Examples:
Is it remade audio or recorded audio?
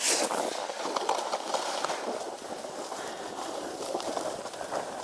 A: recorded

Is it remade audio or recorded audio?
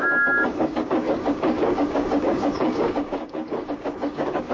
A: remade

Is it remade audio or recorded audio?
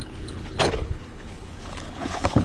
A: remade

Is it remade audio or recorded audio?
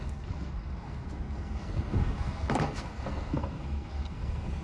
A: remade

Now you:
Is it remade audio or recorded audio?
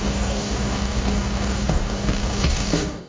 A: remade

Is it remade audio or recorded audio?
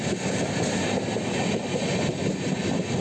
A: recorded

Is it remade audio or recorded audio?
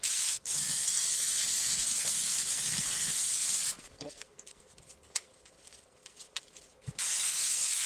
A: remade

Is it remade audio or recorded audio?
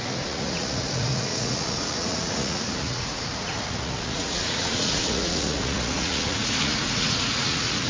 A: remade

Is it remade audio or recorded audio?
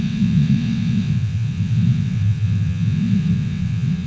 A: remade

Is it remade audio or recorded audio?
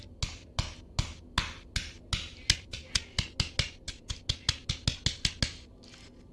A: recorded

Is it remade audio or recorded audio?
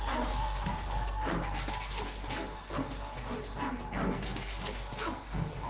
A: remade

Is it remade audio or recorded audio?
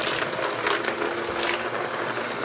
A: recorded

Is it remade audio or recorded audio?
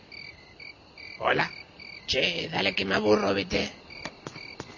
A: recorded